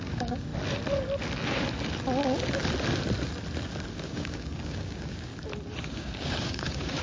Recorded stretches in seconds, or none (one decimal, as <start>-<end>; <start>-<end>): 0.5-3.9; 5.3-5.8